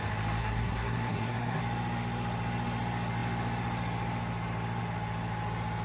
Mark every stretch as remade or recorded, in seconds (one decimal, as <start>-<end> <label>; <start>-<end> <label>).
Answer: 0.0-0.4 recorded; 0.4-1.6 remade; 1.6-5.8 recorded